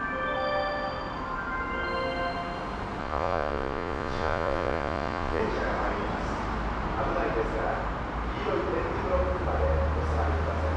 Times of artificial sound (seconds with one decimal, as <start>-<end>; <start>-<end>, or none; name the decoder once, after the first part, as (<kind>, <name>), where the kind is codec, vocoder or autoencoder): 3.0-5.4 (vocoder, Vocos)